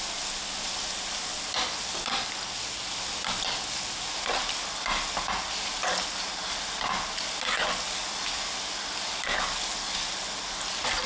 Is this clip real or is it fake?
real